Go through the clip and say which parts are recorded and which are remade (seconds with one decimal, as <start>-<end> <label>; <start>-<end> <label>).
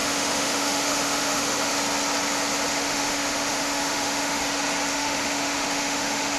0.0-1.7 remade; 1.7-2.7 recorded; 2.7-4.4 remade; 4.4-4.9 recorded; 4.9-6.4 remade